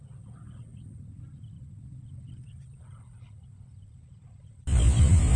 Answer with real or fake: real